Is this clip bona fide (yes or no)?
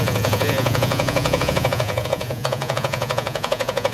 no